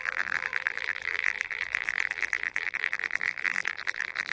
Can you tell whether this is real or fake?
fake